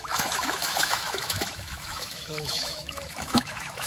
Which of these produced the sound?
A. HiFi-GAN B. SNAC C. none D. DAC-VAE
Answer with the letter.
D